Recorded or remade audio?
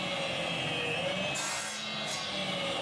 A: recorded